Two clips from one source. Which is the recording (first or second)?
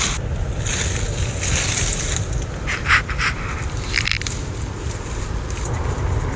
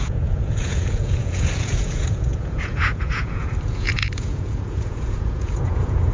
first